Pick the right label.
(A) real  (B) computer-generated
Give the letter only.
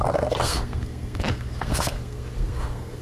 B